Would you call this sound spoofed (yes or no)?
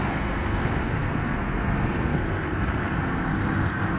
yes